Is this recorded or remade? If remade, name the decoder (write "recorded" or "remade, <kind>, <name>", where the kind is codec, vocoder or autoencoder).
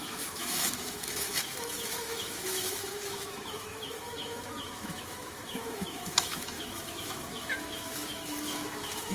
remade, autoencoder, DAC-VAE